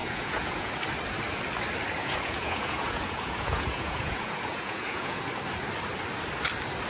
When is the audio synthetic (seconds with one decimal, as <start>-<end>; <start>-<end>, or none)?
0.0-0.7; 2.0-5.2